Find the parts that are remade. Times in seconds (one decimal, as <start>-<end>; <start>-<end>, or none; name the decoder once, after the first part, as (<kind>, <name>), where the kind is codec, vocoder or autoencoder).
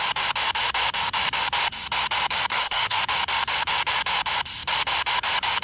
2.5-3.0 (codec, SNAC)